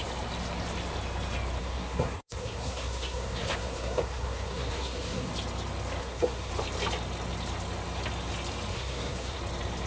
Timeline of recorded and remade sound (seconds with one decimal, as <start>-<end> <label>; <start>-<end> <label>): 0.0-1.6 recorded; 1.6-5.3 remade; 5.3-6.0 recorded; 6.0-6.5 remade; 6.5-8.7 recorded; 8.7-9.4 remade; 9.4-9.9 recorded